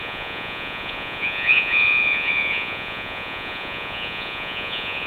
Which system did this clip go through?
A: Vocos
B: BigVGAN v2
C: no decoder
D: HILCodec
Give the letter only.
A